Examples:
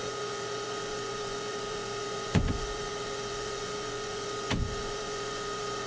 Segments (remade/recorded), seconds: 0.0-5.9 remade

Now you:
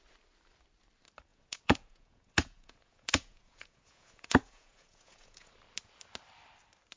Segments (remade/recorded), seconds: 0.0-1.3 recorded; 1.3-5.5 remade; 5.5-7.0 recorded

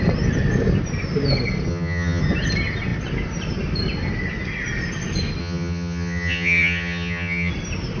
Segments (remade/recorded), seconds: 0.0-1.7 recorded; 1.7-2.2 remade; 2.2-5.4 recorded; 5.4-7.5 remade; 7.5-8.0 recorded

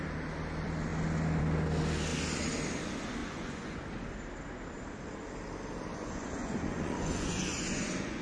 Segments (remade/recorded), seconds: 0.0-3.2 recorded; 3.2-3.8 remade; 3.8-5.9 recorded; 5.9-8.2 remade

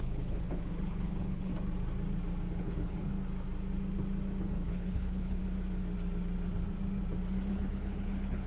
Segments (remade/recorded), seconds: 0.0-1.5 remade; 1.5-2.6 recorded; 2.6-3.1 remade; 3.1-4.4 recorded; 4.4-5.4 remade; 5.4-7.5 recorded; 7.5-8.5 remade

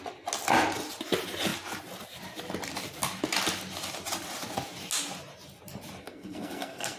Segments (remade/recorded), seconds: 0.0-6.0 recorded; 6.0-7.0 remade